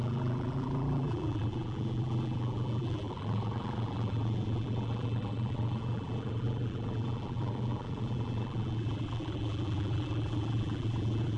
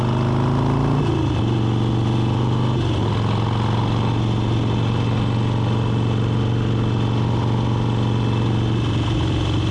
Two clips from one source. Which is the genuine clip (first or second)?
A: second